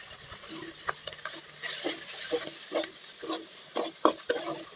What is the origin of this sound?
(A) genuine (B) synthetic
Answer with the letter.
B